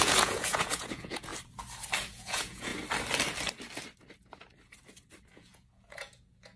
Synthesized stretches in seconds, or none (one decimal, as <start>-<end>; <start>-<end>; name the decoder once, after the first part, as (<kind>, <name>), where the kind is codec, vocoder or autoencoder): 0.0-1.3 (vocoder, Vocos); 2.1-2.7; 5.3-6.6